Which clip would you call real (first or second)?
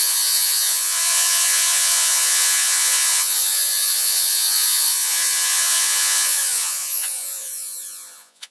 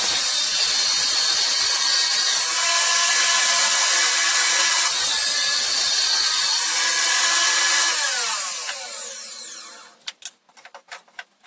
second